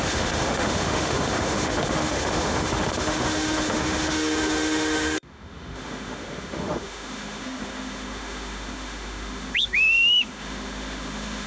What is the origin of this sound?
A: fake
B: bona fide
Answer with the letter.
A